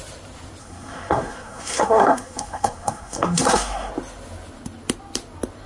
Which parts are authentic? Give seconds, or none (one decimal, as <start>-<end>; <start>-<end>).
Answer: 0.0-0.6; 3.9-5.7